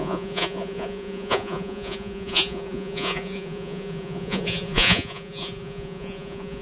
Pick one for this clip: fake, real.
fake